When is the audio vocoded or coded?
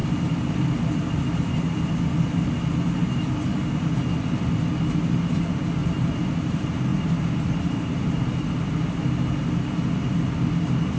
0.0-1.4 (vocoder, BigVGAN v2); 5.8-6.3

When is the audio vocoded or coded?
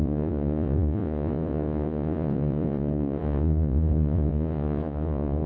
0.0-5.5 (vocoder, Vocos)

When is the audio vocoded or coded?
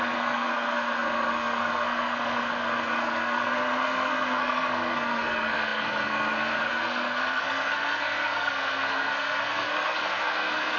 0.0-10.8 (codec, SNAC)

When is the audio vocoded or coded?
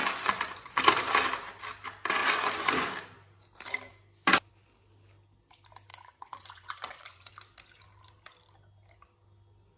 0.0-0.8 (vocoder, Vocos); 2.2-2.9; 5.9-7.3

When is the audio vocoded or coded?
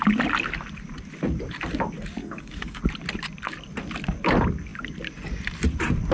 2.2-2.8 (codec, DAC)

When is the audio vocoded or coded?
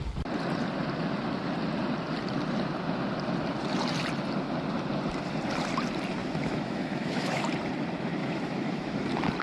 6.2-7.4 (autoencoder, DAC-VAE); 8.2-8.9